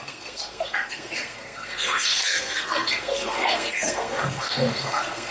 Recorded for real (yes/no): no